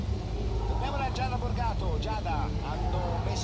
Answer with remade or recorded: recorded